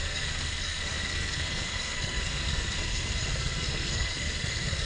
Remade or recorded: remade